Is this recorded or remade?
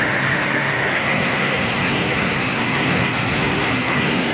remade